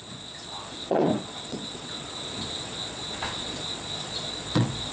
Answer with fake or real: fake